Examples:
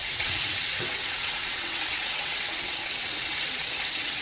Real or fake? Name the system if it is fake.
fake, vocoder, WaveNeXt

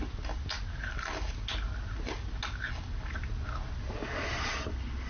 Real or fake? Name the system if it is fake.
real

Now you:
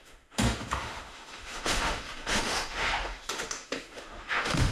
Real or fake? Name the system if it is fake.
fake, autoencoder, DAC-VAE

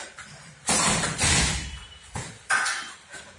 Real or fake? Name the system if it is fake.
fake, vocoder, BigVGAN v2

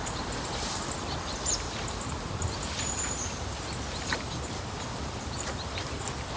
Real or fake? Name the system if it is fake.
real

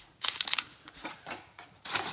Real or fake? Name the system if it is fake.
fake, vocoder, Vocos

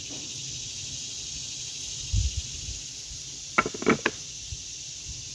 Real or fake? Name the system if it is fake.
real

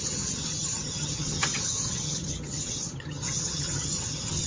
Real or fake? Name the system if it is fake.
fake, vocoder, HiFi-GAN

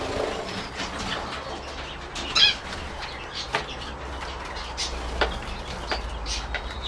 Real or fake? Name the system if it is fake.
real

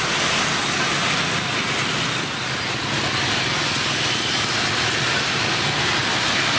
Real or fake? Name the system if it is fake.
real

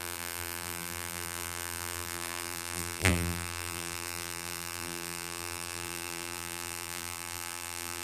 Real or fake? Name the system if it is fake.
fake, vocoder, BigVGAN v2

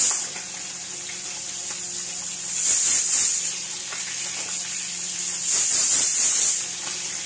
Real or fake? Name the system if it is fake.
real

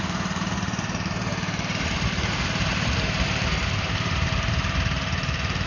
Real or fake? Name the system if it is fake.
fake, vocoder, BigVGAN v2